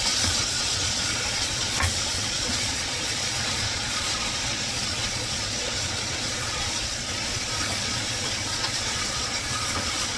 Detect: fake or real fake